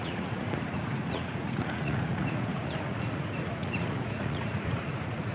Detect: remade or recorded remade